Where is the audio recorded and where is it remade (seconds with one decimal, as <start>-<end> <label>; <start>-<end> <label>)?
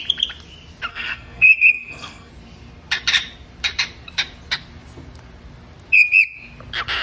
0.0-0.9 recorded; 0.9-2.3 remade; 2.3-7.0 recorded